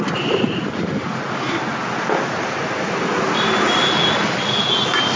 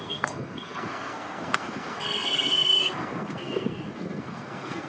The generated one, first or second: second